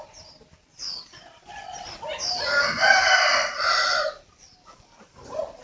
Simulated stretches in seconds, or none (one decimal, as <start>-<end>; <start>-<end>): 3.3-4.5